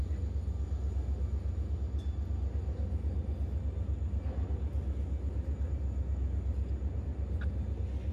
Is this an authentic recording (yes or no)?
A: yes